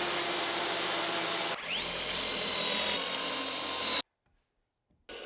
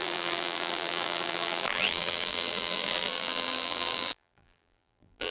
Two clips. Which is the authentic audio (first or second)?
first